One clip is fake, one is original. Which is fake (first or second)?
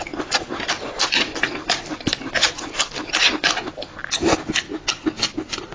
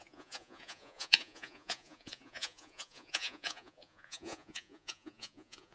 second